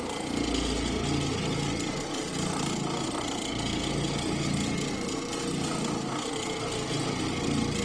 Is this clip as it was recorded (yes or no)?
yes